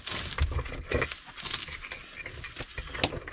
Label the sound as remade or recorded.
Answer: recorded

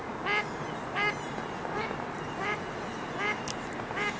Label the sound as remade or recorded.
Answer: recorded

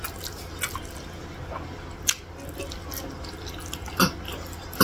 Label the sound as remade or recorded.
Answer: recorded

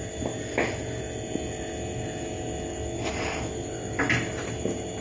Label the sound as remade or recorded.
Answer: recorded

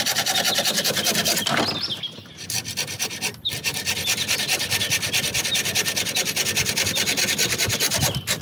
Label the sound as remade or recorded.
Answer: recorded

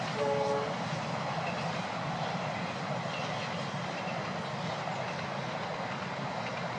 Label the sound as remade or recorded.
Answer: recorded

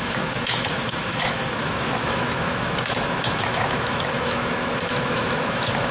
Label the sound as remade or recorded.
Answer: remade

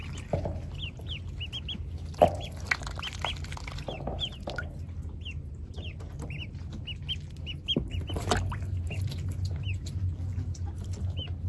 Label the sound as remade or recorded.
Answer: recorded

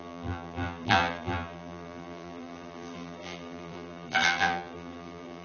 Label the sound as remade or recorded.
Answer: remade